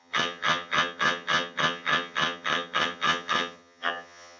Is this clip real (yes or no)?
no